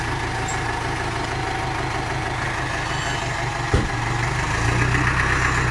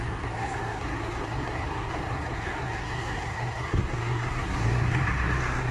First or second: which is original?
first